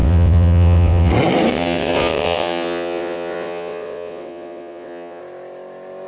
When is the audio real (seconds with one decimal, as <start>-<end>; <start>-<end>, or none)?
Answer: 1.1-1.5; 5.2-6.1